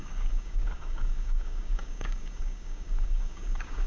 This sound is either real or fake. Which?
fake